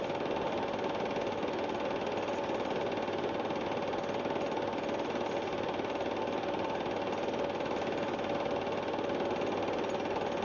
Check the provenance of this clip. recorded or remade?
recorded